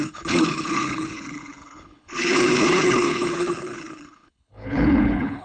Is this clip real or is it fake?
fake